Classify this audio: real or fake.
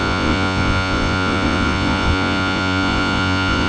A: fake